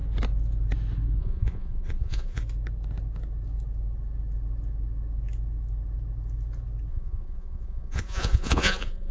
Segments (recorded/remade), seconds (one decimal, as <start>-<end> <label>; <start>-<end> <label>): 0.0-1.2 recorded; 1.2-2.4 remade; 2.4-6.9 recorded; 6.9-9.1 remade